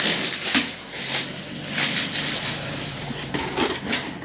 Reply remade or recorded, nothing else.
recorded